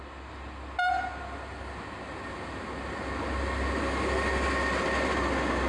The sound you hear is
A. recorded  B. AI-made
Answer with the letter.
A